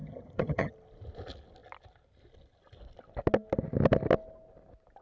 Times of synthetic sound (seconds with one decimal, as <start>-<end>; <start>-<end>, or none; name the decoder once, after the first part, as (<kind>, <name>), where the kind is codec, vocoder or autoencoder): 0.0-0.7 (vocoder, HiFi-GAN)